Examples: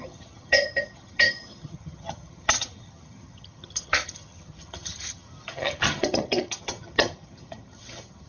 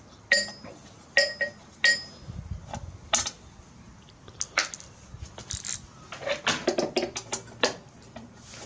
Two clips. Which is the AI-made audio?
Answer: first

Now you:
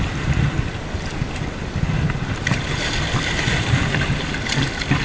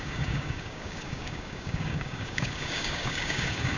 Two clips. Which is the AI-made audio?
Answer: second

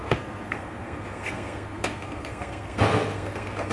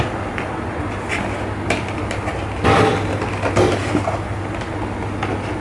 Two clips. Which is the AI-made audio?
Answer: first